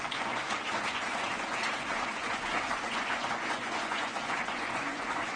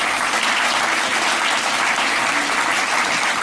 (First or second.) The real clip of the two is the second